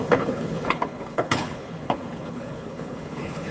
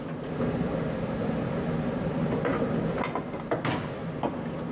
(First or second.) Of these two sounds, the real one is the second